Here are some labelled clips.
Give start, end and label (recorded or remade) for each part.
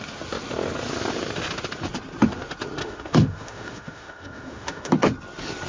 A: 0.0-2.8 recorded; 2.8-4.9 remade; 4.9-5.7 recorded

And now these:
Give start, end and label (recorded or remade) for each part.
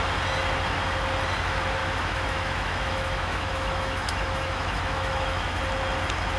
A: 0.0-1.8 recorded; 1.8-5.6 remade; 5.6-6.4 recorded